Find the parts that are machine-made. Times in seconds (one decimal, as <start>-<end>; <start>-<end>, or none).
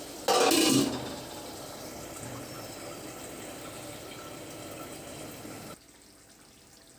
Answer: none